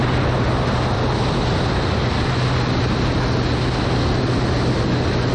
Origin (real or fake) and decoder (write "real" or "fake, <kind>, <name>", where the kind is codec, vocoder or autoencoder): real